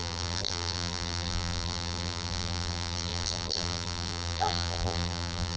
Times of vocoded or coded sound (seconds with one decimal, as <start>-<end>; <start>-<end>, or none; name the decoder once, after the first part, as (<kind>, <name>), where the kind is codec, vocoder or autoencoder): 0.0-5.6 (vocoder, BigVGAN v2)